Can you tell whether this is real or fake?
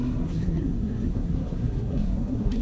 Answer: fake